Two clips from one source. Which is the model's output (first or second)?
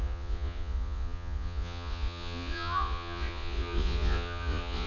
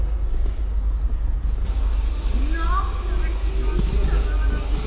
first